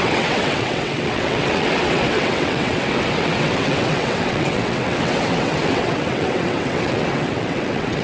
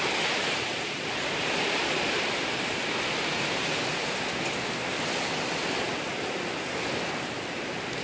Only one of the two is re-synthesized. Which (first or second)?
first